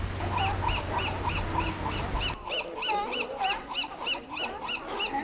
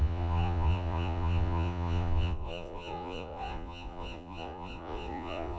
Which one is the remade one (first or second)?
second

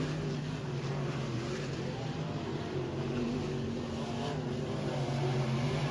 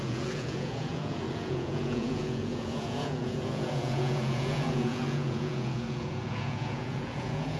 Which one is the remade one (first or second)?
second